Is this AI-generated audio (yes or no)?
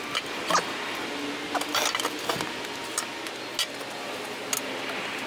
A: no